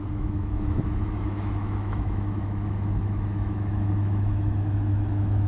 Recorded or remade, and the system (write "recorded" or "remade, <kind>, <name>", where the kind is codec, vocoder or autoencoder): remade, autoencoder, DAC-VAE